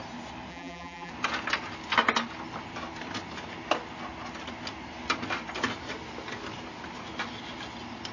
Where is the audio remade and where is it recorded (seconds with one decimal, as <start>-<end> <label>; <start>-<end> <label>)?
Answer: 0.0-0.5 recorded; 0.5-1.1 remade; 1.1-8.1 recorded